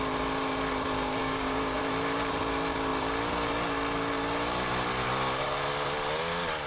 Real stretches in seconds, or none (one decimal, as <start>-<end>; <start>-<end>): 0.0-1.2; 1.8-6.7